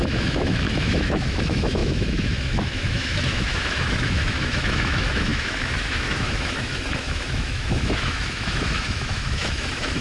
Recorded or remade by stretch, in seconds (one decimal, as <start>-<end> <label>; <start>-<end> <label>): 0.0-10.0 remade